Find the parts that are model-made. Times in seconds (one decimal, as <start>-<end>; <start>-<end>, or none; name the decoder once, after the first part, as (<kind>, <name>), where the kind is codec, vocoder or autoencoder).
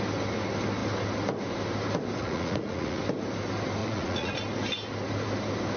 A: 2.2-3.0 (vocoder, Vocos); 3.8-4.3